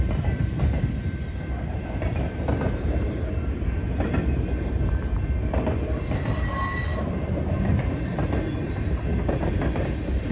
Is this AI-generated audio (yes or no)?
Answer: yes